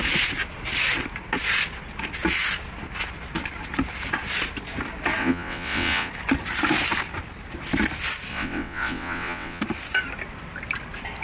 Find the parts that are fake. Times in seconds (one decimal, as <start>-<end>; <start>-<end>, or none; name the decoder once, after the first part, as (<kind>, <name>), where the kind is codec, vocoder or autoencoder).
5.2-6.1 (vocoder, WaveNeXt); 8.3-9.6

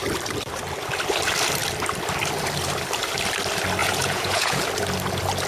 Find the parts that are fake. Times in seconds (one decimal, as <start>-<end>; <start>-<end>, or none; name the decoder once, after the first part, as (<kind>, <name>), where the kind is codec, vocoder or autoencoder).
3.8-4.6 (vocoder, Vocos)

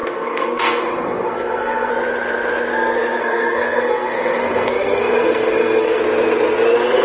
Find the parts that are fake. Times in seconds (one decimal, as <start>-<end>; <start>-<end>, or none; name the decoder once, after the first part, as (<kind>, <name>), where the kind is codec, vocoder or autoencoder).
0.0-1.9 (codec, SNAC); 3.2-6.0

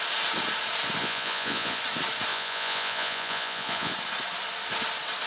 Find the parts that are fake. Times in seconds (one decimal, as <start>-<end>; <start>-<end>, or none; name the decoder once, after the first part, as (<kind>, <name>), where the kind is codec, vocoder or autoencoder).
1.0-1.8 (vocoder, Vocos); 2.3-3.9

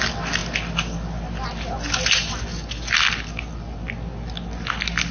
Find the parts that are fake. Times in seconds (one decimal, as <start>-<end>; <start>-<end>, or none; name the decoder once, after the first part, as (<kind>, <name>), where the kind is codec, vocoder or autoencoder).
none